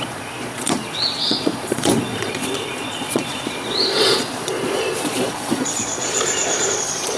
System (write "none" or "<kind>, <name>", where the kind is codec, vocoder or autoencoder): vocoder, Vocos